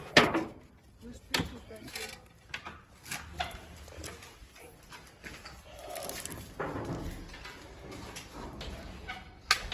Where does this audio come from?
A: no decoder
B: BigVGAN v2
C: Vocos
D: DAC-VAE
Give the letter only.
A